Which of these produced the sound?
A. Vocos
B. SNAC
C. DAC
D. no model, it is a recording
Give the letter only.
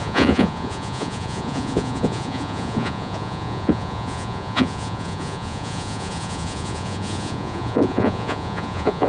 A